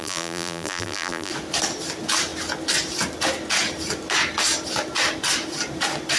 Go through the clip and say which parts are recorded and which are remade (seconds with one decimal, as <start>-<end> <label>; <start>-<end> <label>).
0.0-1.3 remade; 1.3-6.2 recorded